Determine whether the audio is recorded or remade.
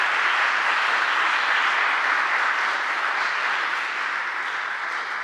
recorded